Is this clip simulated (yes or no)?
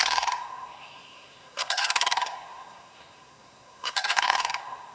yes